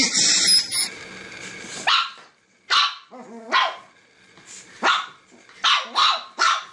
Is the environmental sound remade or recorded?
recorded